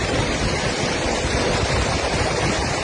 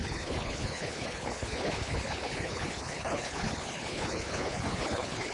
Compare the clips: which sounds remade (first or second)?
second